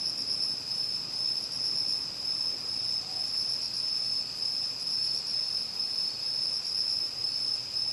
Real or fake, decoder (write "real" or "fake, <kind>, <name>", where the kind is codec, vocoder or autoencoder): real